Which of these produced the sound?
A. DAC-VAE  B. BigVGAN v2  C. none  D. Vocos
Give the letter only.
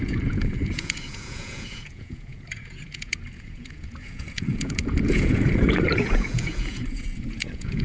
D